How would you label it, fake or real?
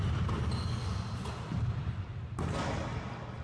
real